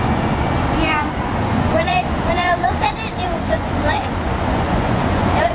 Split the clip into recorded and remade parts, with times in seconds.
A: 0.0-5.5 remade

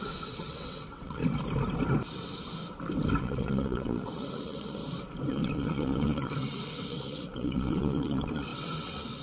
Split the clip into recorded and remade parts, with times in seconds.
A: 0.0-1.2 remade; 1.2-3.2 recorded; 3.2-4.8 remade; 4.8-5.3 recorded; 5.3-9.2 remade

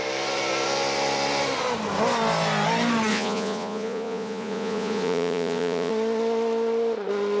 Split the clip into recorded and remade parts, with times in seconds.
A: 0.0-3.1 recorded; 3.1-5.9 remade; 5.9-7.4 recorded

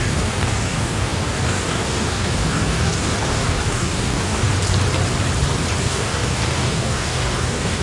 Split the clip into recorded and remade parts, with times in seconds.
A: 0.0-4.5 remade; 4.5-5.8 recorded; 5.8-7.8 remade

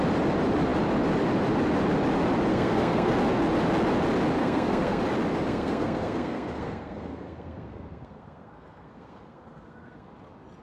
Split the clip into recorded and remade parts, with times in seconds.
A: 0.0-2.5 recorded; 2.5-3.1 remade; 3.1-4.4 recorded; 4.4-5.0 remade; 5.0-5.5 recorded; 5.5-10.1 remade; 10.1-10.6 recorded